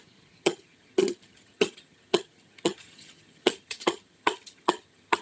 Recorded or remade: remade